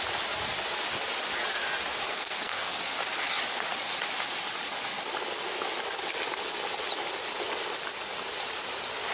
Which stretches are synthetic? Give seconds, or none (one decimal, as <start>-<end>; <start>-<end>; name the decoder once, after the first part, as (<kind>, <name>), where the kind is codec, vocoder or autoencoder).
2.1-2.8 (codec, SNAC)